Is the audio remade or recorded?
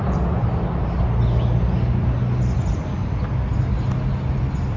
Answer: recorded